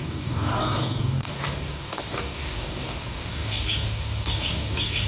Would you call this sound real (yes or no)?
no